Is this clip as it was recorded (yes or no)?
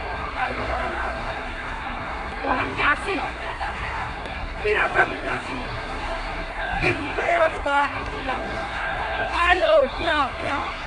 no